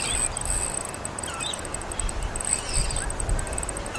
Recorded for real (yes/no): yes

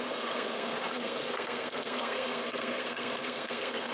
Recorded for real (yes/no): no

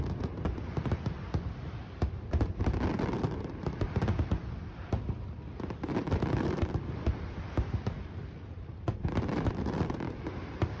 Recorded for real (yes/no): no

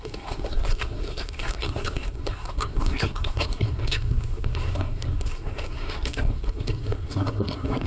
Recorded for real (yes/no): no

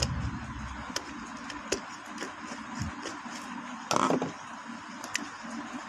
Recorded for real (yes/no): yes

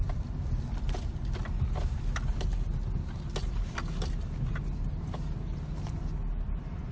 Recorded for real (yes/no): yes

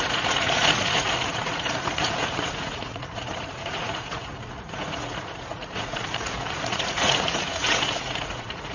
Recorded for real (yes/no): no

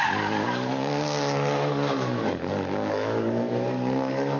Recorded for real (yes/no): no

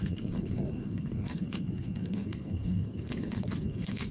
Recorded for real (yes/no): no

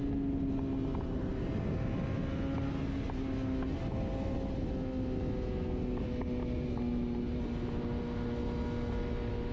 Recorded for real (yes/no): yes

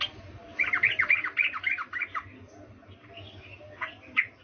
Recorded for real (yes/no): yes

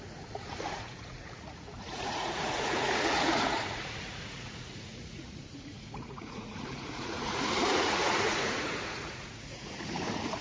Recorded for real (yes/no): no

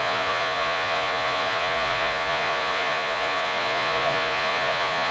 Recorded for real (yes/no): no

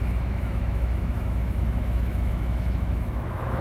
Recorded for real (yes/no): no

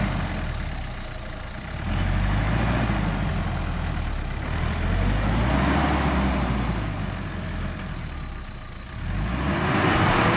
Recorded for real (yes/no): yes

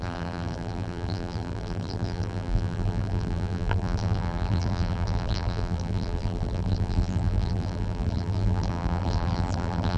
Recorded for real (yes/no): no